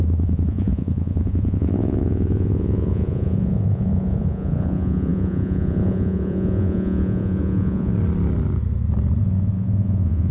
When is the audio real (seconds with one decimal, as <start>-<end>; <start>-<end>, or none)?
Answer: 7.9-9.2